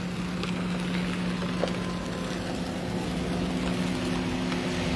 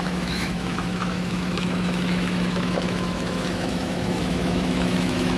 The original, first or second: first